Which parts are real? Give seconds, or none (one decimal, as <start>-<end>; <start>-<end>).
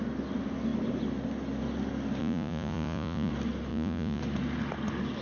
0.0-2.2; 3.3-3.7; 4.2-5.2